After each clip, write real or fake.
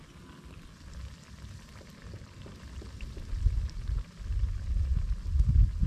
real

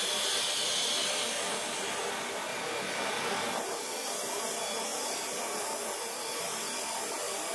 real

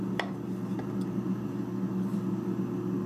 real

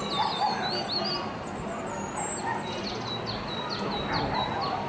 real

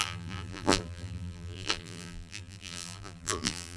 fake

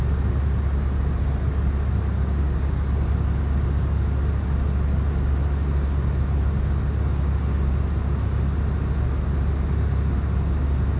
real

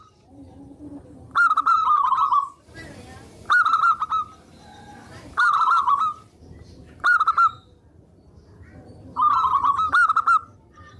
fake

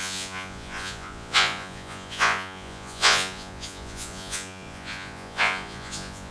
fake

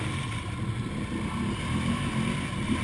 real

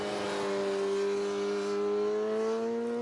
real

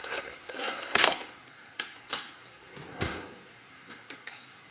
fake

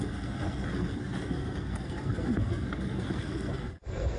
fake